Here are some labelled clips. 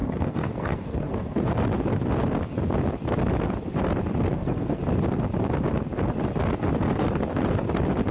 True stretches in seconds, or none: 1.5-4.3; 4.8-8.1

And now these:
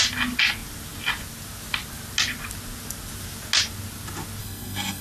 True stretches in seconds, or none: 0.0-4.4

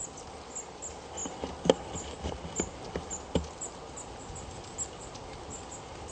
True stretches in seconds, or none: 0.0-6.1

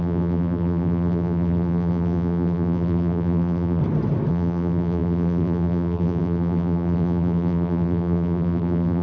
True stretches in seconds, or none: 3.8-4.3